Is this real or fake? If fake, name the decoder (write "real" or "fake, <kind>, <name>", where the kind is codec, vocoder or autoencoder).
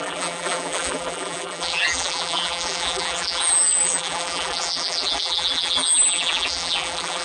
fake, vocoder, BigVGAN v2